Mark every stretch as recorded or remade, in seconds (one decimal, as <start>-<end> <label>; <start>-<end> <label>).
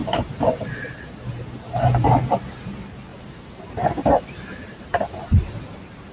0.0-2.1 remade; 2.1-3.1 recorded; 3.1-5.6 remade; 5.6-6.1 recorded